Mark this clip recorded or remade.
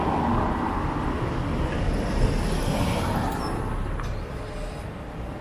recorded